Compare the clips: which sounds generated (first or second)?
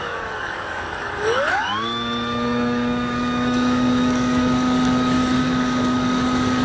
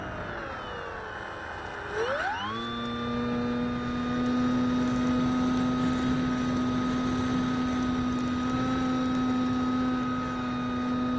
first